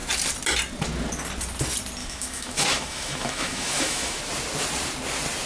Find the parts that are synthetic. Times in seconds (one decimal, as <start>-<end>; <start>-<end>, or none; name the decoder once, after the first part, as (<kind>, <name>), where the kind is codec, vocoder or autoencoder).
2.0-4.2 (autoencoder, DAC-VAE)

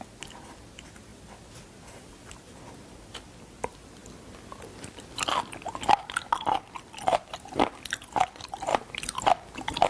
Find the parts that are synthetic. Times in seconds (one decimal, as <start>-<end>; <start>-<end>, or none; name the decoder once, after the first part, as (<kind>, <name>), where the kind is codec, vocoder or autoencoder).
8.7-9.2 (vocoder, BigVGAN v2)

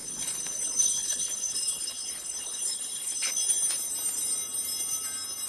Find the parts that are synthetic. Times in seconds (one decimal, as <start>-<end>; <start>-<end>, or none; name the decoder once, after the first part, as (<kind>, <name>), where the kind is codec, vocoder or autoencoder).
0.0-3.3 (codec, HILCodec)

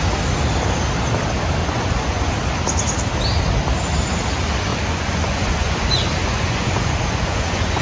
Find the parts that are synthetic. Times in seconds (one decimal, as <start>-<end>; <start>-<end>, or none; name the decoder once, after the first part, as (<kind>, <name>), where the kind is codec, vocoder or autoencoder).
1.6-2.2 (vocoder, Vocos); 4.7-7.8

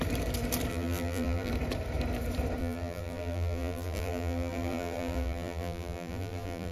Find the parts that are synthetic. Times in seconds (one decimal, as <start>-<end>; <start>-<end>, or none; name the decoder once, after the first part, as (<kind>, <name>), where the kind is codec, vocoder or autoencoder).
0.7-1.5 (vocoder, BigVGAN v2); 2.6-6.7

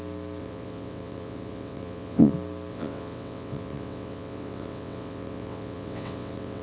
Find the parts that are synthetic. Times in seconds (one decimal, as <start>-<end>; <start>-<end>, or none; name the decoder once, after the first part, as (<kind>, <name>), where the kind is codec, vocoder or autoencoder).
0.4-2.3 (vocoder, WaveNeXt); 2.7-6.6